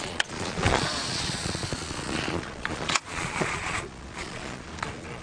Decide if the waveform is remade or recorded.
remade